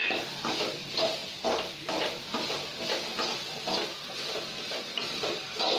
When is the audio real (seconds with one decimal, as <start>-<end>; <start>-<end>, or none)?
0.0-4.9